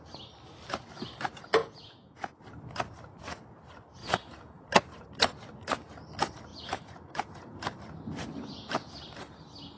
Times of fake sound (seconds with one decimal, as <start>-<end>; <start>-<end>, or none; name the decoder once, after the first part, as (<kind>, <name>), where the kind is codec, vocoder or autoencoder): 1.6-2.4 (vocoder, Vocos); 4.0-4.7; 6.5-7.6; 8.3-8.9